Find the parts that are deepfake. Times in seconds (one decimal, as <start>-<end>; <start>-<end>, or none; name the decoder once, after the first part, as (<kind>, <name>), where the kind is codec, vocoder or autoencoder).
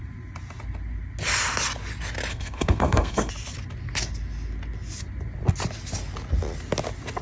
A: 2.3-3.3 (codec, SNAC)